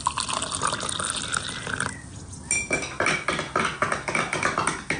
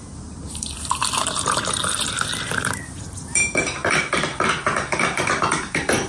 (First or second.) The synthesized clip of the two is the second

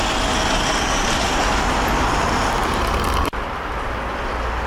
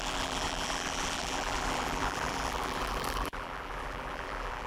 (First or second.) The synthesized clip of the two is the second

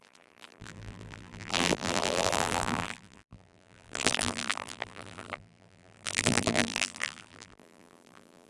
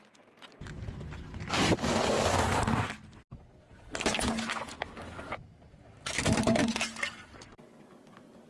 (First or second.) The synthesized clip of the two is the first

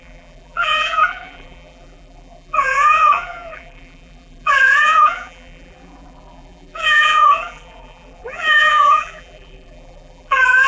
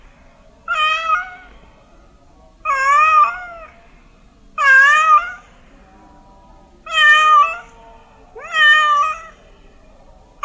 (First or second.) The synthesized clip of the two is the first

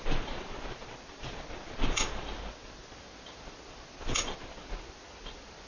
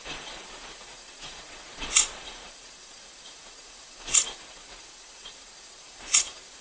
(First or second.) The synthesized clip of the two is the second